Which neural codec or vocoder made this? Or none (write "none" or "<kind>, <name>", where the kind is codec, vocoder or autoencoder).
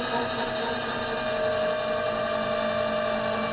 none